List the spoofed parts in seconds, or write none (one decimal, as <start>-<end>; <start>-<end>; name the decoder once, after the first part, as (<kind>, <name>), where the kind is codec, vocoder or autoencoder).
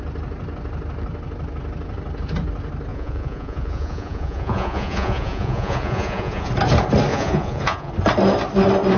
2.9-6.5 (vocoder, Vocos); 7.1-7.9